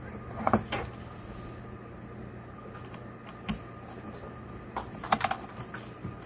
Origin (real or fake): real